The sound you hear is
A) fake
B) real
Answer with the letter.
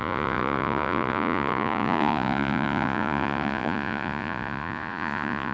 A